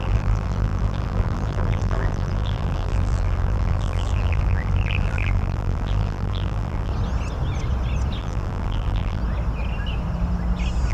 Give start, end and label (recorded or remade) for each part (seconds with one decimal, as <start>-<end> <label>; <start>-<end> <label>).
0.0-6.9 remade; 6.9-8.2 recorded; 8.2-9.2 remade; 9.2-10.9 recorded